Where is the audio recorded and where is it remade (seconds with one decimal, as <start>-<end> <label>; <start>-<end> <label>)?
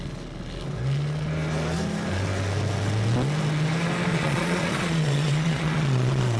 0.0-4.1 recorded; 4.1-6.4 remade